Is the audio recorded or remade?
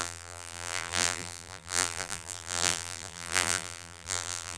remade